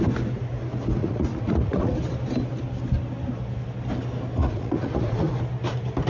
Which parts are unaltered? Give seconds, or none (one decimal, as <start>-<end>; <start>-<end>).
0.0-1.0; 1.9-4.4; 5.4-6.1